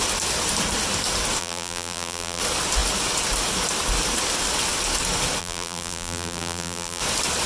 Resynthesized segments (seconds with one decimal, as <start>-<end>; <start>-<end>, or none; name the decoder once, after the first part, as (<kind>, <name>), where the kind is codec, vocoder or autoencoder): 1.4-2.4 (vocoder, BigVGAN v2); 5.4-7.0